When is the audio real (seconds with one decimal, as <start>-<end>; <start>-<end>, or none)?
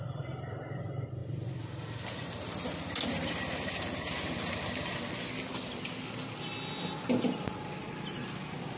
0.0-8.8